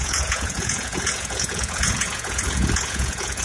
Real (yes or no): no